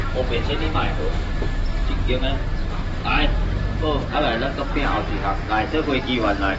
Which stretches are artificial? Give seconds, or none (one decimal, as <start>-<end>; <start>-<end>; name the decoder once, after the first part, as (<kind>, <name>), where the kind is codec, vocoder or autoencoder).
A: 0.0-2.2 (vocoder, BigVGAN v2); 2.6-3.6